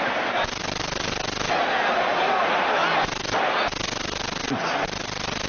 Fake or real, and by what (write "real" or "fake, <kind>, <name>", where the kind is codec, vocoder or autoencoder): real